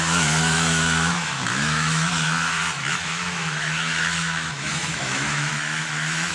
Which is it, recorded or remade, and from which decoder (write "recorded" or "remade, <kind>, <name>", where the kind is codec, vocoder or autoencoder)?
remade, autoencoder, DAC-VAE